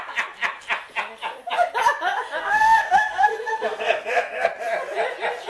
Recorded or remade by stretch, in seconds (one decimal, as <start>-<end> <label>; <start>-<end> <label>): 0.0-2.4 recorded; 2.4-4.5 remade; 4.5-5.5 recorded